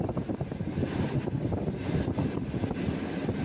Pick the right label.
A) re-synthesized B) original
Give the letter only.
B